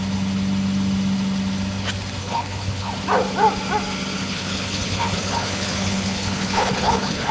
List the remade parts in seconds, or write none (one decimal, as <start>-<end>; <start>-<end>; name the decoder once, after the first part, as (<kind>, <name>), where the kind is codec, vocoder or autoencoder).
2.2-2.9 (codec, HILCodec); 4.2-7.3